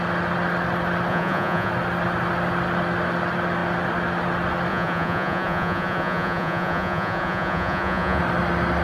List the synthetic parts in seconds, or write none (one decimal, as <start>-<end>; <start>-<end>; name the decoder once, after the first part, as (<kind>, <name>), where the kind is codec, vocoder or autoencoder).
1.1-1.7 (vocoder, Vocos); 4.7-8.2

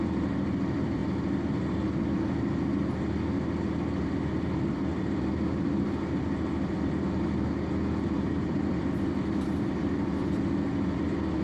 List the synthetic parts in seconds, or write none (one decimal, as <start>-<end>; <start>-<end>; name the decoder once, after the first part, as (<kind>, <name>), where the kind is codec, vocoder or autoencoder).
0.0-1.0 (vocoder, BigVGAN v2); 4.0-11.4

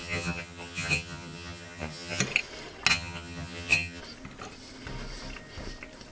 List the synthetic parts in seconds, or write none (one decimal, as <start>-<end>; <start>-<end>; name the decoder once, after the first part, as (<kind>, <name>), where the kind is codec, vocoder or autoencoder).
0.0-2.2 (vocoder, HiFi-GAN); 2.9-4.0